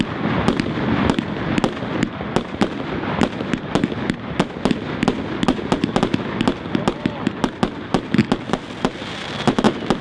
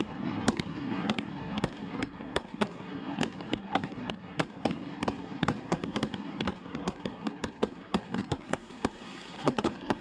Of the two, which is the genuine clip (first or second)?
first